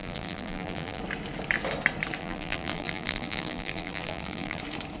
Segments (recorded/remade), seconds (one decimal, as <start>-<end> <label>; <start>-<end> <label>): 0.0-1.0 remade; 1.0-2.2 recorded; 2.2-4.6 remade; 4.6-5.0 recorded